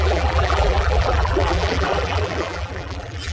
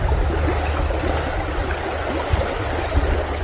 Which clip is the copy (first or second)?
first